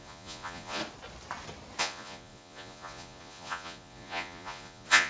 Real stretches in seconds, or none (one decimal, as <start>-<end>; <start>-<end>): 0.8-1.8